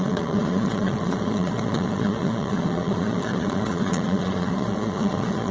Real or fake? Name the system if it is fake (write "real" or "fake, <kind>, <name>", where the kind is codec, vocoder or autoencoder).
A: fake, vocoder, Vocos